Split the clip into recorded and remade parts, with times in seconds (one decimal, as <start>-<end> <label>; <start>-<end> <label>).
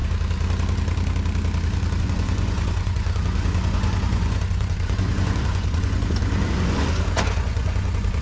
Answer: 0.0-2.0 recorded; 2.0-8.2 remade